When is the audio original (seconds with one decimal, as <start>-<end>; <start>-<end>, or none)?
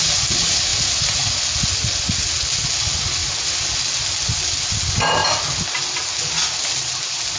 0.0-7.4